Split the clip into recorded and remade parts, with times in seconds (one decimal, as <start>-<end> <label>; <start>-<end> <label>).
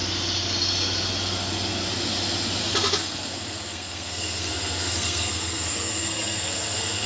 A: 0.0-2.6 recorded; 2.6-7.1 remade